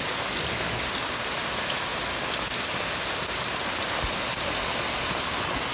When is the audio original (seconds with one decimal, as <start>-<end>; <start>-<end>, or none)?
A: 0.0-5.7